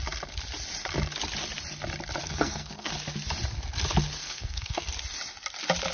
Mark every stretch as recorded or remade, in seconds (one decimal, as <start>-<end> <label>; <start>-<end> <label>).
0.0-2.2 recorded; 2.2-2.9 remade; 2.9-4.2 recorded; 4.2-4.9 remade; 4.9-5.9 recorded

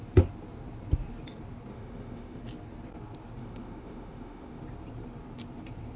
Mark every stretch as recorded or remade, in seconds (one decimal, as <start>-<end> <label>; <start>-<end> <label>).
0.0-1.7 recorded; 1.7-2.4 remade; 2.4-3.4 recorded; 3.4-4.6 remade; 4.6-6.0 recorded

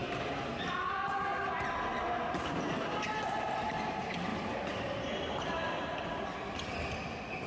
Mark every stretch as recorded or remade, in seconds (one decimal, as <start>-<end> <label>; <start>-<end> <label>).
0.0-7.5 recorded

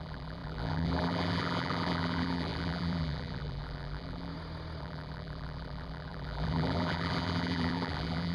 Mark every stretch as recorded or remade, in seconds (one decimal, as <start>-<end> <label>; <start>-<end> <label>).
0.0-4.3 remade; 4.3-4.8 recorded; 4.8-8.3 remade

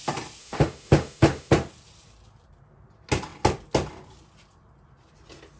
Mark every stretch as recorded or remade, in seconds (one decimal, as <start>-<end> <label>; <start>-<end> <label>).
0.0-0.4 recorded; 0.4-1.5 remade; 1.5-5.6 recorded